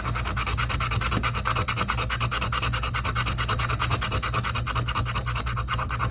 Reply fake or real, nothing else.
real